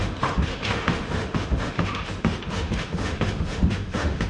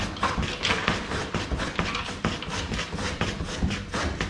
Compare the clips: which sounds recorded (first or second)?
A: second